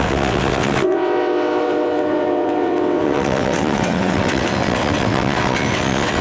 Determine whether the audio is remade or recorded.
remade